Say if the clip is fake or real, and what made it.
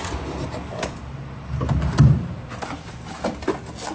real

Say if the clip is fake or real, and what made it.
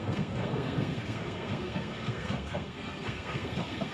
fake, codec, SNAC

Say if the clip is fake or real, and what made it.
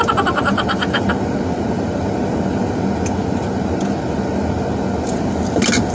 real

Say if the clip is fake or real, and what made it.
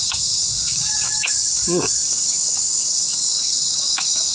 fake, codec, DAC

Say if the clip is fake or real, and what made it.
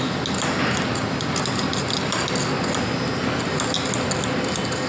real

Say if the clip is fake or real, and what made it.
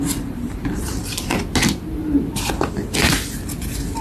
real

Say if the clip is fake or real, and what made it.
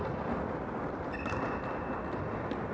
real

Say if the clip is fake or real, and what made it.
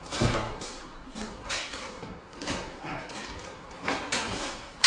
fake, codec, SNAC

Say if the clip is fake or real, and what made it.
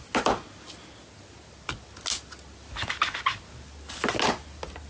real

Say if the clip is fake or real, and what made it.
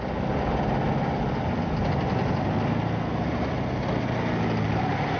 real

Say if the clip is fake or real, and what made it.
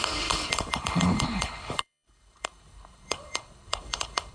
fake, codec, HILCodec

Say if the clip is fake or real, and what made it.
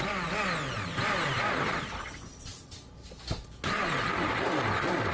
real